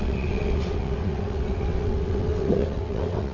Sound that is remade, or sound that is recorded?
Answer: remade